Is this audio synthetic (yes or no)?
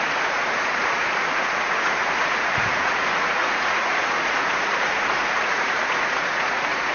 yes